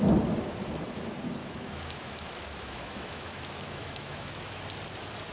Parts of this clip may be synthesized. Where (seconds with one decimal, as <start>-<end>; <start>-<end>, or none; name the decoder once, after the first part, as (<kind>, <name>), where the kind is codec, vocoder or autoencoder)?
1.4-4.6 (autoencoder, DAC-VAE)

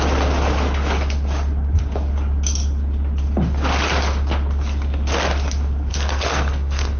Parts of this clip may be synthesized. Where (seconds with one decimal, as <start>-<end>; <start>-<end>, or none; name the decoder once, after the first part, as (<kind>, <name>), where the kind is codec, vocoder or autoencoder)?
5.9-7.0 (codec, SNAC)

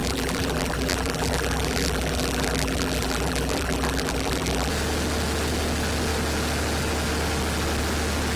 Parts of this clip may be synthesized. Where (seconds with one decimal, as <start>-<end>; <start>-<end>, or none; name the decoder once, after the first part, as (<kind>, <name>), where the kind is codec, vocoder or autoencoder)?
0.0-4.7 (vocoder, BigVGAN v2)

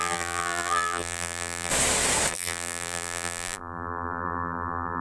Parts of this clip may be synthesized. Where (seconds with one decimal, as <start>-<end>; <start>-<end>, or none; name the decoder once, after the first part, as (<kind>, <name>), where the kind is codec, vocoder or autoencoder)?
0.0-1.7 (vocoder, BigVGAN v2); 2.3-5.0

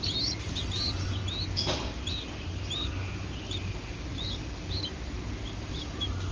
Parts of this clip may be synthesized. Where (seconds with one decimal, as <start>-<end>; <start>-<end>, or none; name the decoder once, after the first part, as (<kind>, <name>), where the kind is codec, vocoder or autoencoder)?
none

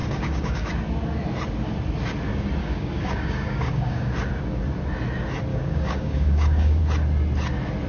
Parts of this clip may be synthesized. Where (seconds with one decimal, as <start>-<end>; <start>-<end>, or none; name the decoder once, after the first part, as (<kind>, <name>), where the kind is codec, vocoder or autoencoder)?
0.0-0.7 (codec, DAC); 2.6-4.1; 5.5-6.8

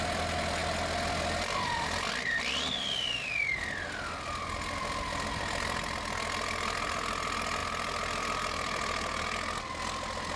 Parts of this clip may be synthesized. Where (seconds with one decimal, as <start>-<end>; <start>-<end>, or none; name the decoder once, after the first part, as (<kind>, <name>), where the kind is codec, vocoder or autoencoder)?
none

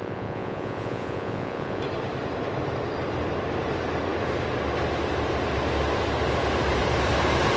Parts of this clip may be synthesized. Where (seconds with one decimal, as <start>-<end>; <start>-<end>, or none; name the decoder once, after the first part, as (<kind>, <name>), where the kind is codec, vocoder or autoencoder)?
0.0-1.8 (vocoder, Vocos)